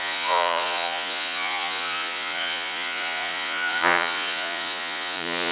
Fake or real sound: fake